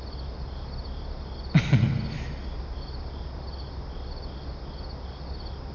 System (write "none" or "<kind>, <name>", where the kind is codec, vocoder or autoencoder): none